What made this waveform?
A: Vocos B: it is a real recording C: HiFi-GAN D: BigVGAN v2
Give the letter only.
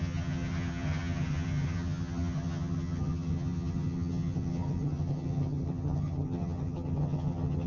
C